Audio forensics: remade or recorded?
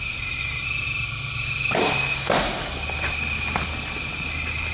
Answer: recorded